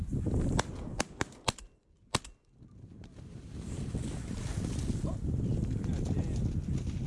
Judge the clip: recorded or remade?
recorded